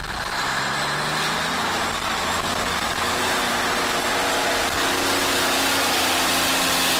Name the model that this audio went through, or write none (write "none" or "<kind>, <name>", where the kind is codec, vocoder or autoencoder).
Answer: none